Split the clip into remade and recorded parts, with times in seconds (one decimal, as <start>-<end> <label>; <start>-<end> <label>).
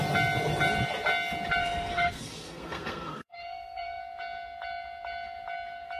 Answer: 0.0-1.6 recorded; 1.6-4.0 remade; 4.0-6.0 recorded